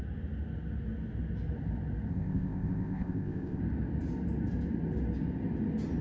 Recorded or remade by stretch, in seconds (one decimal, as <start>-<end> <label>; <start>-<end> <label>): 0.0-2.1 recorded; 2.1-3.6 remade; 3.6-6.0 recorded